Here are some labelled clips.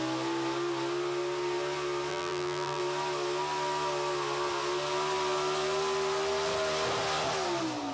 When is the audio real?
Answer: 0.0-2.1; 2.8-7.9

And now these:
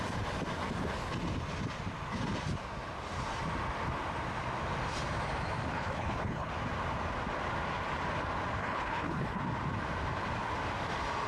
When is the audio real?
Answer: 0.0-5.7; 6.5-8.6; 9.4-11.3

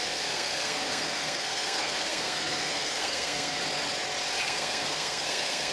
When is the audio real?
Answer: 3.6-4.4

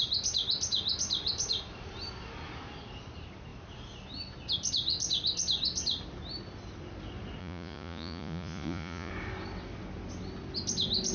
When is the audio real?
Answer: 0.0-7.4; 9.1-11.1

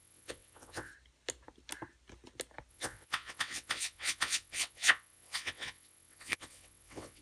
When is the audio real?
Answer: 0.9-2.7

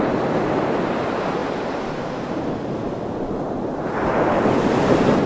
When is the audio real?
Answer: 1.4-4.6

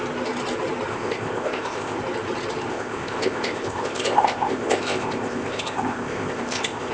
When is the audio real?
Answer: 0.0-0.9; 2.0-2.7

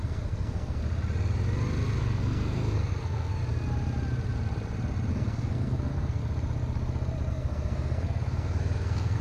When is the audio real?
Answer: 0.8-2.0; 3.4-5.1; 6.2-7.3